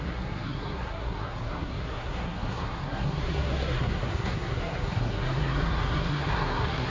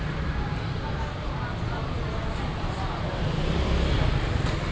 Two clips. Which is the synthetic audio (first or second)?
first